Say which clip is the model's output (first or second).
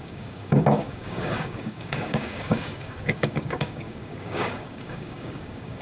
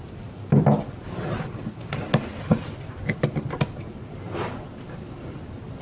first